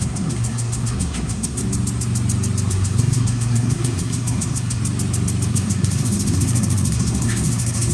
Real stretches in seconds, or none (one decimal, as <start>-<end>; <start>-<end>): 1.6-2.7; 4.8-5.5